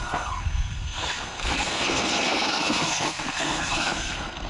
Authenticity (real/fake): fake